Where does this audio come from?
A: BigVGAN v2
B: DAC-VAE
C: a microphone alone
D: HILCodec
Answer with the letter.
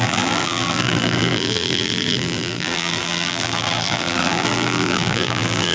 A